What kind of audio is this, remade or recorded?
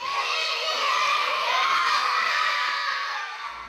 remade